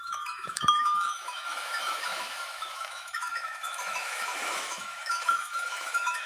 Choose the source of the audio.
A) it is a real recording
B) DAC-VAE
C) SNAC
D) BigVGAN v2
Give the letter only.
B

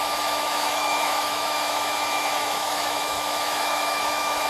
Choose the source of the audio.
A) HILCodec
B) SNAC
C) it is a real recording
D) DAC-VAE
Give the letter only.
D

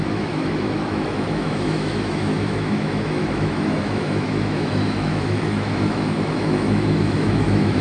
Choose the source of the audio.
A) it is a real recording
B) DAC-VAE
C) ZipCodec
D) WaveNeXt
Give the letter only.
B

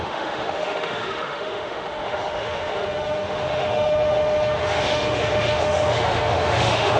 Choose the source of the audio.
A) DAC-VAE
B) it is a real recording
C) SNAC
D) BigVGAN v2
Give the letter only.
A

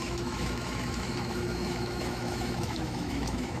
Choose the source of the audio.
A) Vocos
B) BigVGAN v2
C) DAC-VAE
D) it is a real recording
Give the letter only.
C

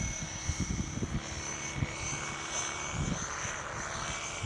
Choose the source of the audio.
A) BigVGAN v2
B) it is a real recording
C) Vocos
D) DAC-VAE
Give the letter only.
B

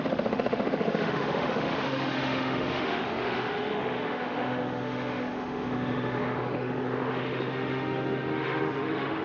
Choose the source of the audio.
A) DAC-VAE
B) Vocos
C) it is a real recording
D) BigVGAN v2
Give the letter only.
A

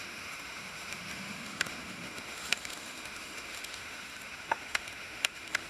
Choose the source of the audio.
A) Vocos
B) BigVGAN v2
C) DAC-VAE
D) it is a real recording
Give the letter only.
C